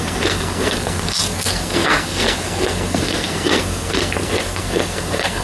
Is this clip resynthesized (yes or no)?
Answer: yes